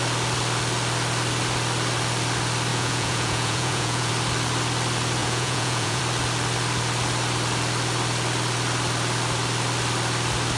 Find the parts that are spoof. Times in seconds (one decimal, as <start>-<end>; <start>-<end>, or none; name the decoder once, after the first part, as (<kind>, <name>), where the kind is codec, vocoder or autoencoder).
2.7-4.1 (vocoder, Vocos); 5.2-6.0